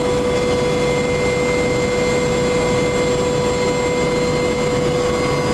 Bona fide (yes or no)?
yes